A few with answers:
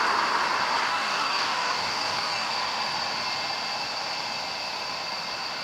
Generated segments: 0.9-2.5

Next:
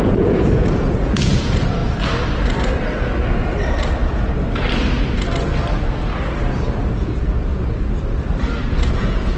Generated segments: 0.0-1.8; 6.9-7.5; 8.7-9.4

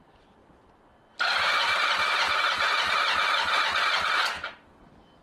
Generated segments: none

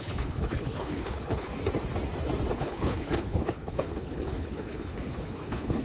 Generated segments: 0.0-1.5; 2.5-5.8

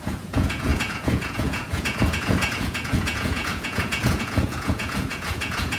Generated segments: 0.0-5.8